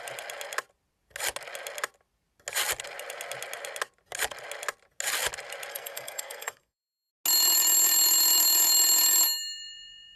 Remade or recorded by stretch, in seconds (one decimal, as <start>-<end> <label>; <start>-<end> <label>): 0.0-5.7 recorded; 5.7-7.1 remade; 7.1-10.2 recorded